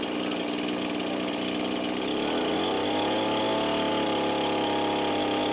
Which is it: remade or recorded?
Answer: recorded